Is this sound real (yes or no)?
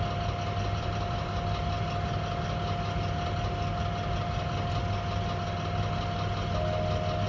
yes